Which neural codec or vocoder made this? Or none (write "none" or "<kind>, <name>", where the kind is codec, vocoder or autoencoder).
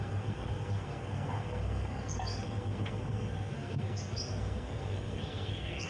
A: codec, SNAC